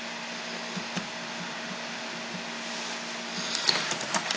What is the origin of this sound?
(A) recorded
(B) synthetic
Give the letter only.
A